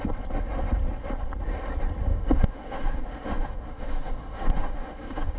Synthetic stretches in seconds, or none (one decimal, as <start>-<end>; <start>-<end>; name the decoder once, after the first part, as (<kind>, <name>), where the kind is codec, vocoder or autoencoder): 2.1-5.4 (autoencoder, DAC-VAE)